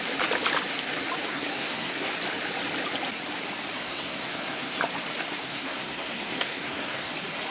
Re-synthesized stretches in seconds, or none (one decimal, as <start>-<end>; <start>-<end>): 1.3-2.1; 3.8-4.8; 5.4-7.1